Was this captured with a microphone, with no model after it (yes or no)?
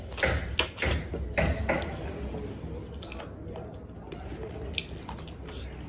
yes